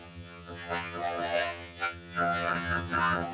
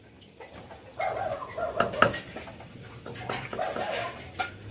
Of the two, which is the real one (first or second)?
second